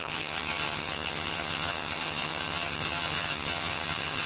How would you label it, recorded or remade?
remade